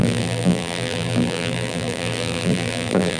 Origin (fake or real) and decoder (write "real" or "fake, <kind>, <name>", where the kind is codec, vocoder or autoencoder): fake, vocoder, BigVGAN v2